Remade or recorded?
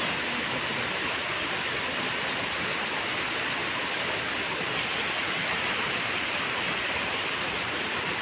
recorded